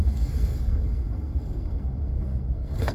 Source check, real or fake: fake